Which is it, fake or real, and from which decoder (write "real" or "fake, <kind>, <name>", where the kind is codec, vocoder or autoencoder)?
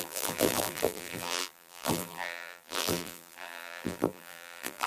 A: fake, vocoder, BigVGAN v2